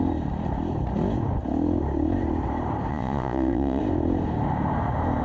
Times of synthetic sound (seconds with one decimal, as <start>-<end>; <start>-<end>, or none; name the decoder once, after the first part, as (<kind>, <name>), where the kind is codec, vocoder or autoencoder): 2.9-3.8 (vocoder, Vocos)